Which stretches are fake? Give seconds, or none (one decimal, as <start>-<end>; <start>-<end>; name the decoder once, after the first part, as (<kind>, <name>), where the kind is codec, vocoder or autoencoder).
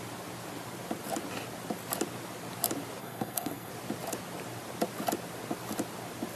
3.0-3.7 (codec, SNAC)